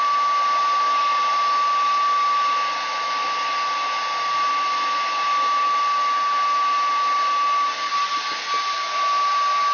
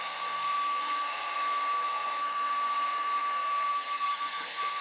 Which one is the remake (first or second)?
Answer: second